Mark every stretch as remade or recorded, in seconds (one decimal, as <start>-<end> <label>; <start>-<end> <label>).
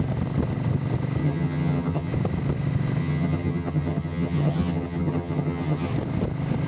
0.0-1.2 recorded; 1.2-2.1 remade; 2.1-3.0 recorded; 3.0-5.9 remade; 5.9-6.7 recorded